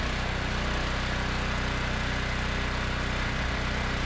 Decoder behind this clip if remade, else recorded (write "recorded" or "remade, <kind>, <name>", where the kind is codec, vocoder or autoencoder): recorded